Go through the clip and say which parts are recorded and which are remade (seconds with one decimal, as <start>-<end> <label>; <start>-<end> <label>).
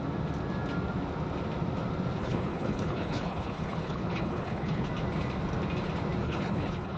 0.0-2.2 recorded; 2.2-4.9 remade; 4.9-6.2 recorded; 6.2-7.0 remade